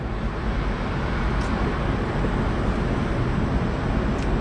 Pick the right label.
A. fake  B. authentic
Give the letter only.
B